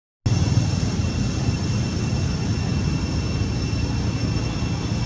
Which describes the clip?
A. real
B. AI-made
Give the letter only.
A